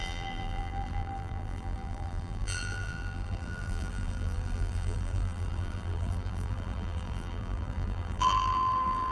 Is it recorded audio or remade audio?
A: remade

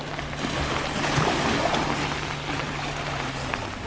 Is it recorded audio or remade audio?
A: recorded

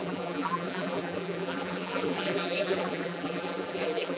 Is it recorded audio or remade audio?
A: remade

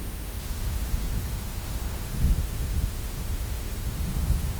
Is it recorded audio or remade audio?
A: remade